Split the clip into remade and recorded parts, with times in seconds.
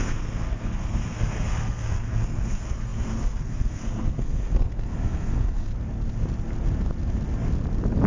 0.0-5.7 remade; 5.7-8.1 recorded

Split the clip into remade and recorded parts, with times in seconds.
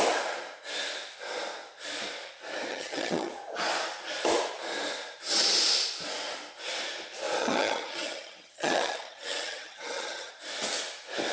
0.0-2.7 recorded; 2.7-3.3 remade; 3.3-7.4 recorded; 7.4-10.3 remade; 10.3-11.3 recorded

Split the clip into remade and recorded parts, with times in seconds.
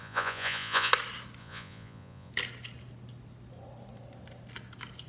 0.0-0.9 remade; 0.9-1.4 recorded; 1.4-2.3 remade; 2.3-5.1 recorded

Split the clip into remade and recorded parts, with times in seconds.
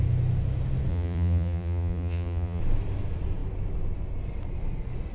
0.0-0.9 recorded; 0.9-2.6 remade; 2.6-5.1 recorded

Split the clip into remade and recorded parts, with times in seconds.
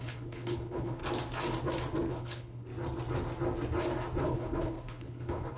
0.0-1.0 remade; 1.0-2.1 recorded; 2.1-2.7 remade; 2.7-4.2 recorded; 4.2-5.6 remade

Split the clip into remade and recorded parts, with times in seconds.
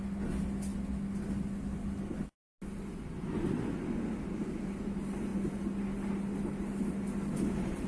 0.0-7.9 recorded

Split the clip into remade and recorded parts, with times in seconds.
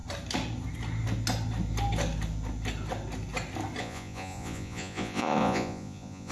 0.0-3.8 recorded; 3.8-6.3 remade